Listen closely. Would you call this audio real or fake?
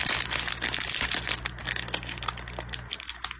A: real